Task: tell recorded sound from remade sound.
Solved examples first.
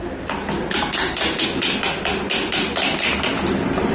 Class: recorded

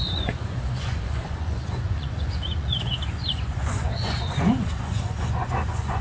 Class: remade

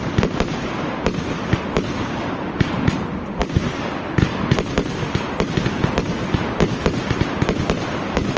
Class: recorded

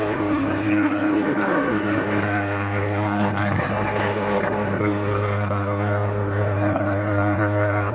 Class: remade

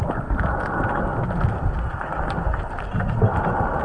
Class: recorded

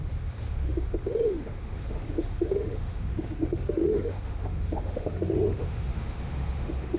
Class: remade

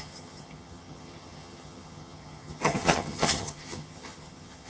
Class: remade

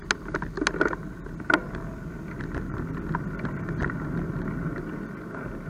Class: recorded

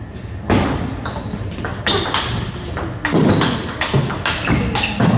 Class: recorded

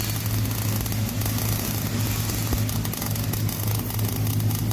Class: recorded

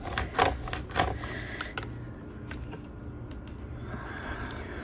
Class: recorded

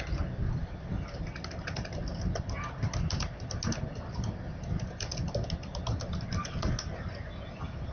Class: recorded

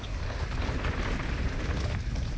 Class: recorded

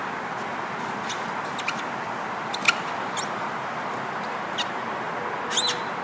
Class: recorded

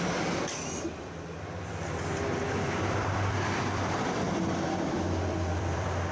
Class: remade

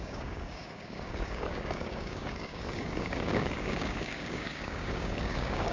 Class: remade